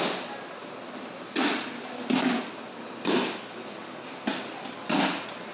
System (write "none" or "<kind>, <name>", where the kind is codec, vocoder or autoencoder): none